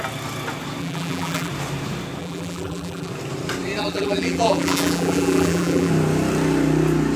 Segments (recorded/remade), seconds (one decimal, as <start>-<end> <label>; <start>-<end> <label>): 0.0-0.8 recorded; 0.8-1.5 remade; 1.5-2.2 recorded; 2.2-3.1 remade; 3.1-3.8 recorded; 3.8-5.9 remade; 5.9-7.2 recorded